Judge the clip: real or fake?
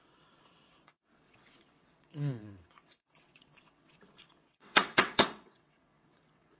fake